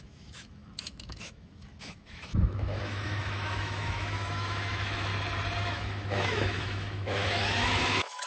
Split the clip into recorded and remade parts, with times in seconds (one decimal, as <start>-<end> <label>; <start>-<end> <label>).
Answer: 0.0-5.1 remade; 5.1-5.6 recorded; 5.6-8.3 remade